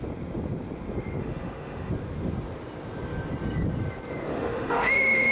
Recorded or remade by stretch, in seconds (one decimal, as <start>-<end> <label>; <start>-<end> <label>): 0.0-1.2 recorded; 1.2-1.9 remade; 1.9-4.3 recorded; 4.3-5.3 remade